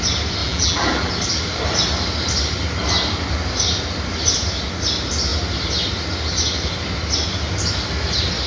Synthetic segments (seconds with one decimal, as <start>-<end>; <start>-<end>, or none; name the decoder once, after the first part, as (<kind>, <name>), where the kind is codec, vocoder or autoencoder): 0.4-1.1 (vocoder, BigVGAN v2)